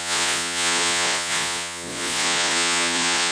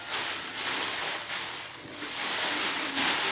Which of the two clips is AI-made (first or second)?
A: first